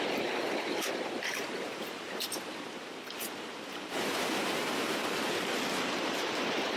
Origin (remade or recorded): recorded